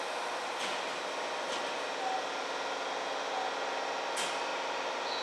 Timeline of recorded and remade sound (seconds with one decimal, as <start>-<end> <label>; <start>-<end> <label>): 0.0-5.2 recorded